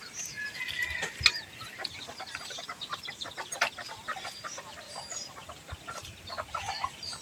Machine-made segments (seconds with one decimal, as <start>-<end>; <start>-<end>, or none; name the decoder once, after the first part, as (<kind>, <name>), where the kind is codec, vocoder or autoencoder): 2.9-3.6 (vocoder, BigVGAN v2); 4.1-5.5; 6.0-6.6